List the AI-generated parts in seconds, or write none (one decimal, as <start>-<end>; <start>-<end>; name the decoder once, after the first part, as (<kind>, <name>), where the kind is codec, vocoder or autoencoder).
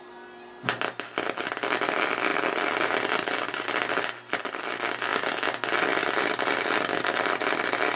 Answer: none